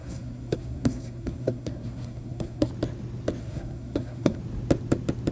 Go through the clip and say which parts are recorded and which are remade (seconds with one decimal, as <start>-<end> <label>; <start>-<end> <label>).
0.0-2.7 remade; 2.7-3.4 recorded; 3.4-4.4 remade; 4.4-5.3 recorded